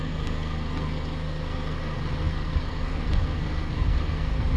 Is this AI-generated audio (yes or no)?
yes